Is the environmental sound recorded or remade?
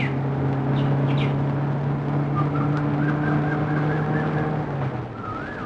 recorded